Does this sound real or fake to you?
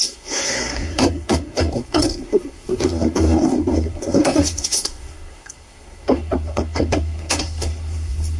fake